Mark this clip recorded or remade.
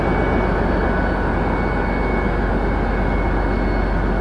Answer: recorded